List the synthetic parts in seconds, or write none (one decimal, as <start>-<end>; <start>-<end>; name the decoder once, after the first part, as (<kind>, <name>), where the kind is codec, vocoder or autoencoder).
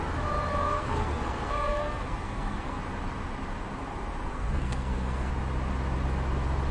0.6-2.8 (codec, SNAC); 4.3-5.3